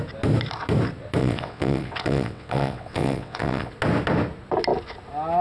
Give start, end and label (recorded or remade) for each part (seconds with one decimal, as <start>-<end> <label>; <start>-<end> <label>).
0.0-1.2 recorded; 1.2-3.7 remade; 3.7-5.4 recorded